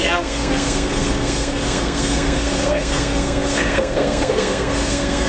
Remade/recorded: remade